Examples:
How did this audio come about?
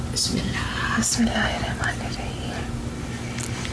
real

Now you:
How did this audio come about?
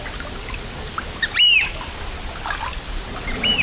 real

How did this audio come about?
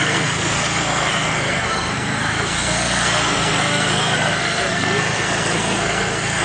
fake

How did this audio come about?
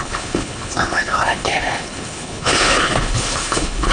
fake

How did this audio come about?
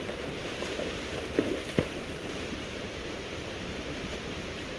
fake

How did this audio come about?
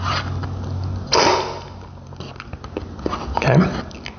real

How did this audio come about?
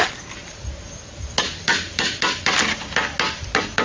real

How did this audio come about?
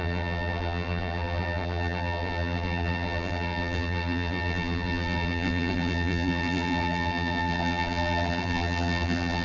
fake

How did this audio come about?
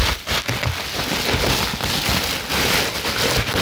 real